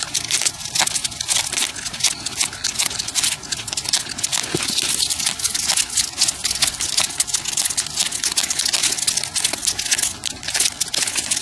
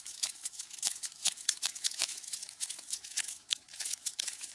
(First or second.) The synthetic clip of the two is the second